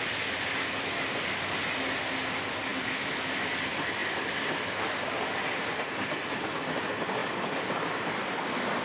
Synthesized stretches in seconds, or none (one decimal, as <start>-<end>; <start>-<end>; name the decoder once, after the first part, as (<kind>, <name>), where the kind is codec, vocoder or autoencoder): 4.0-4.5 (vocoder, BigVGAN v2)